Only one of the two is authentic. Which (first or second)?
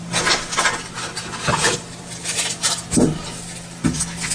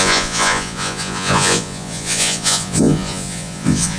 first